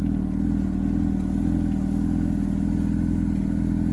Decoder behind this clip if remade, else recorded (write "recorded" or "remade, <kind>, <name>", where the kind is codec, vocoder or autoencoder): recorded